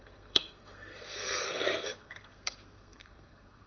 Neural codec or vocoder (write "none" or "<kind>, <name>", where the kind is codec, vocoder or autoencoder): codec, SNAC